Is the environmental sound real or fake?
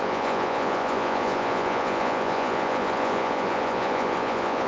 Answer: fake